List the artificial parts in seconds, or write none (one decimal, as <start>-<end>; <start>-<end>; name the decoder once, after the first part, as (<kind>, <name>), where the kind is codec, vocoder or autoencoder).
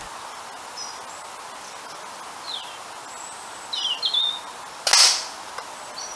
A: none